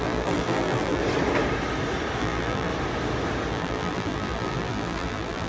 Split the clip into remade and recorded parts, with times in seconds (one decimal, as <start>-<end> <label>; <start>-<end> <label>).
0.0-1.0 remade; 1.0-2.2 recorded; 2.2-2.7 remade; 2.7-3.5 recorded; 3.5-5.5 remade